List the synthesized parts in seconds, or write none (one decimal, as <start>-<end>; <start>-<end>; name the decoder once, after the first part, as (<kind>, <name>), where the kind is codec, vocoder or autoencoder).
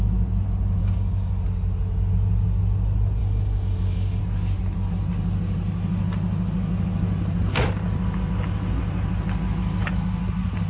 0.8-1.3 (codec, DAC); 3.2-4.2